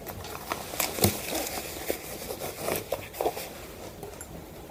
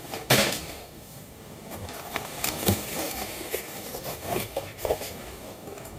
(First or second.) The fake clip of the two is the second